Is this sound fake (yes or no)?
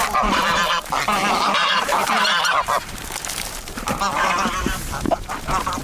yes